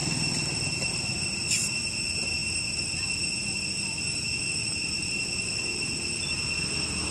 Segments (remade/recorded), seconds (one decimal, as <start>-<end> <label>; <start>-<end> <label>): 0.0-7.1 recorded